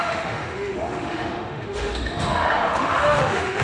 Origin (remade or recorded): remade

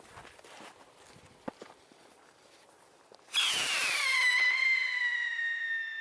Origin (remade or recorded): recorded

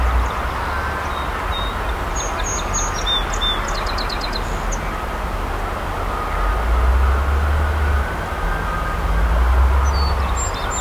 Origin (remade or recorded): recorded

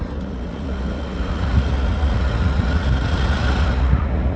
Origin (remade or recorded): remade